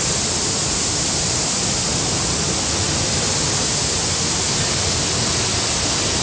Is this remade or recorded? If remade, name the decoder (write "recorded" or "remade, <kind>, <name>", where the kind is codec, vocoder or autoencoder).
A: recorded